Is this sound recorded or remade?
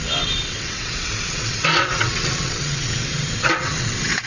remade